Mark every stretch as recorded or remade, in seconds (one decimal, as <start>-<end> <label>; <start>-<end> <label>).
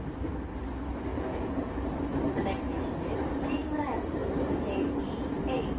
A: 0.0-1.1 recorded; 1.1-1.7 remade; 1.7-5.8 recorded